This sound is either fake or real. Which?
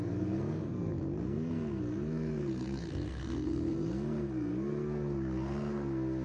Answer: fake